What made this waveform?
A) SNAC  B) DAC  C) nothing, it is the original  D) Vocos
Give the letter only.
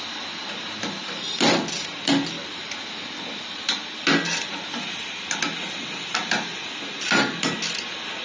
C